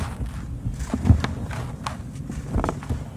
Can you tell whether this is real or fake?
real